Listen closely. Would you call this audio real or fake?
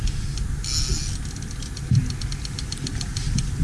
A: real